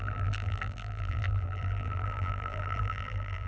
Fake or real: fake